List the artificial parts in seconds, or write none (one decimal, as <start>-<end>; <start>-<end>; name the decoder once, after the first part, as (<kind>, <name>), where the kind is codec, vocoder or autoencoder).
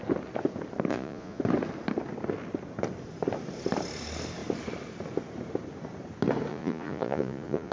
0.9-1.4 (vocoder, Vocos); 6.5-7.7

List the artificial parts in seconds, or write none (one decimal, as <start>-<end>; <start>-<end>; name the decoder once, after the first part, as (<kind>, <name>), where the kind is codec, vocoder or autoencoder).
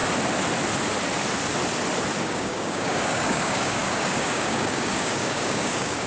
2.2-6.1 (codec, DAC)